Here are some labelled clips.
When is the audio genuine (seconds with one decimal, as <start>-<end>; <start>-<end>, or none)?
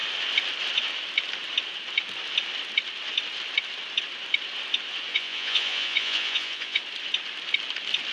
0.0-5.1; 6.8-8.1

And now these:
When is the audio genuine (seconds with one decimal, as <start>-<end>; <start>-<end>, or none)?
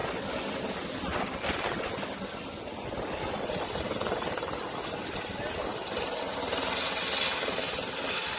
0.0-8.4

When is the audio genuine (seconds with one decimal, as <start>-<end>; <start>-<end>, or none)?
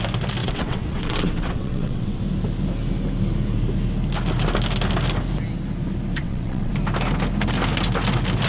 0.0-0.4; 2.2-6.2; 6.7-8.5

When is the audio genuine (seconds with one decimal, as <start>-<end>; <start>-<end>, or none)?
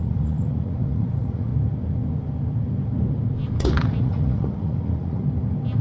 1.5-3.6; 5.2-5.8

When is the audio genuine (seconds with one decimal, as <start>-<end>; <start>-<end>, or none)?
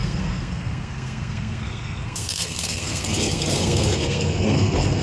none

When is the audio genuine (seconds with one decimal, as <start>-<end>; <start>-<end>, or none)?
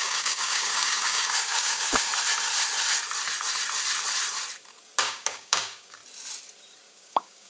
2.1-5.0; 6.0-6.9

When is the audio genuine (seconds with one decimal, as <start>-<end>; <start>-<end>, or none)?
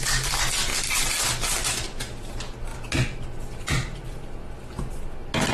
0.0-5.5